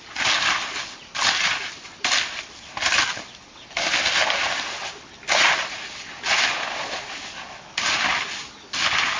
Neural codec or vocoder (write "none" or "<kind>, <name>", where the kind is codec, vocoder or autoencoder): none